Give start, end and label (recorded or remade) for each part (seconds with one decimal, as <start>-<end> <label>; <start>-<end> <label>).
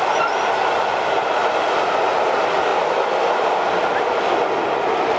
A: 0.0-5.2 recorded